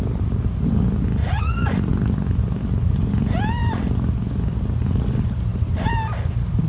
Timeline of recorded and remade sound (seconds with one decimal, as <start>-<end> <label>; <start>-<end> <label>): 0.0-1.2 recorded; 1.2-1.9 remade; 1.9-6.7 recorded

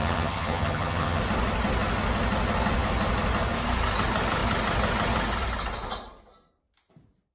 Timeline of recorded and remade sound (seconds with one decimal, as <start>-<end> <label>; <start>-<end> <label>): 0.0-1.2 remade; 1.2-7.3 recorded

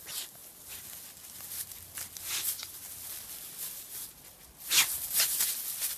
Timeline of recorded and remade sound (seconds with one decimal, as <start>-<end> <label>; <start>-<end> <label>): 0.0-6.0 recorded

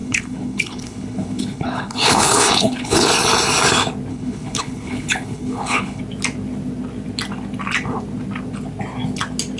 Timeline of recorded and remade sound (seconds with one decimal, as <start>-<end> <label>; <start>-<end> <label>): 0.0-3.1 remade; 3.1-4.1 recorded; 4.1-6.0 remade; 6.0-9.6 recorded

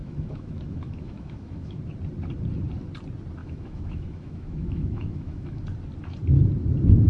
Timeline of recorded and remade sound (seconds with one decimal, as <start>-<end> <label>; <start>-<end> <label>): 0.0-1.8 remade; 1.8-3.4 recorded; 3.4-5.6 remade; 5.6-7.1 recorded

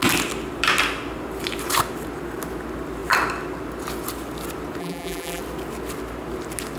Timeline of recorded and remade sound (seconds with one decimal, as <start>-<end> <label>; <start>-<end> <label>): 0.0-4.8 recorded; 4.8-5.4 remade; 5.4-6.8 recorded

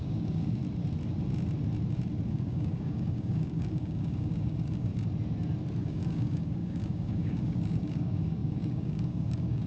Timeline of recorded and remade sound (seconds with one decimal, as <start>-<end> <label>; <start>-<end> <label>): 0.0-0.6 remade; 0.6-2.3 recorded; 2.3-4.9 remade; 4.9-5.8 recorded; 5.8-9.7 remade